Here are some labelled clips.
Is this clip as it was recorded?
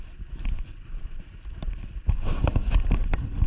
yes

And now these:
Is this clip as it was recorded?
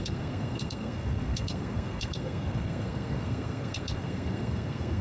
no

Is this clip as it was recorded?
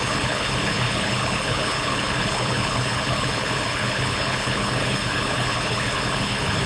no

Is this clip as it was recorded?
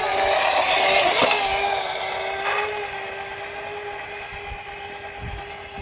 yes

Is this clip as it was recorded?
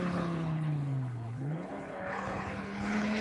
no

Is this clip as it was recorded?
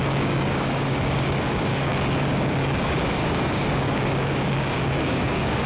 no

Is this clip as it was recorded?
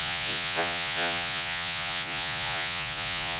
no